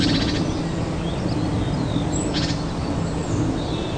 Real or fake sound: real